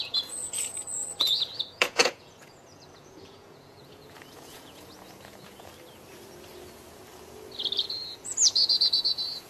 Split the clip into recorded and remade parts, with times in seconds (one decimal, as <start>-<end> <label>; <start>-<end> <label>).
0.0-5.7 remade; 5.7-7.8 recorded; 7.8-9.5 remade